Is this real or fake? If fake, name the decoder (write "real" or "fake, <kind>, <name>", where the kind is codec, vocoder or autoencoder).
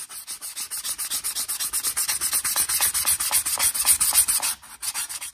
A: real